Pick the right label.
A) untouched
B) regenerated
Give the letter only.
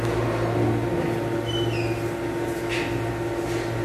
A